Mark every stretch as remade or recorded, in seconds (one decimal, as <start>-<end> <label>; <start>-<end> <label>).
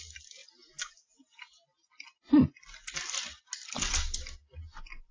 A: 0.0-5.1 recorded